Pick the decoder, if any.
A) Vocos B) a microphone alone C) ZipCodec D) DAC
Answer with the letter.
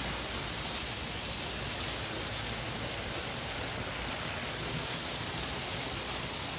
B